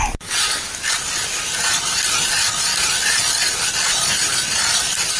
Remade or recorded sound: recorded